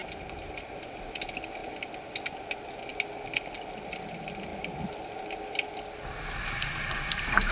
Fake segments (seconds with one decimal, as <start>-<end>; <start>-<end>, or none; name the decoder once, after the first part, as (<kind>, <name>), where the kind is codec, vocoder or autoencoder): 0.0-1.0 (vocoder, BigVGAN v2)